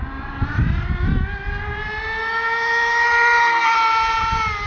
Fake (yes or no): no